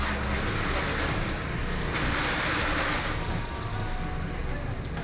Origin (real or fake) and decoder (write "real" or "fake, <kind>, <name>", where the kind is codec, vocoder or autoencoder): real